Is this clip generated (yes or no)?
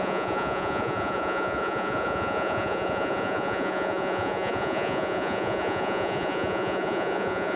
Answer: yes